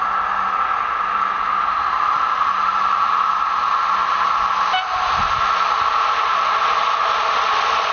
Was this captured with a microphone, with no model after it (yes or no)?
yes